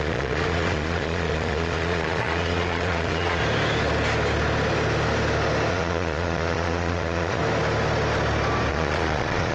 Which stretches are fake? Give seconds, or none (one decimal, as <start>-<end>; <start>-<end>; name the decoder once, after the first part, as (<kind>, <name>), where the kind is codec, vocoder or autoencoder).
0.0-3.4 (vocoder, Vocos); 5.7-7.4; 8.7-9.5